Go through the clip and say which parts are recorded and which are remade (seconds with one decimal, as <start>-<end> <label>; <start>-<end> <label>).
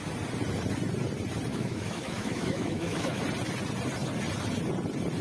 0.0-1.5 recorded; 1.5-3.2 remade; 3.2-5.2 recorded